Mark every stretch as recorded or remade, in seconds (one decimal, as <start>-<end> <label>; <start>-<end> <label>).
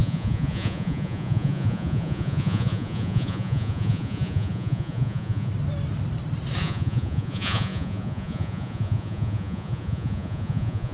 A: 0.0-5.5 remade; 5.5-6.6 recorded; 6.6-10.9 remade